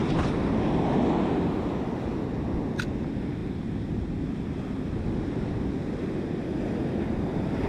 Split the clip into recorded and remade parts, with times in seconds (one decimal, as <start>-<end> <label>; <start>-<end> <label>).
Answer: 0.0-7.7 recorded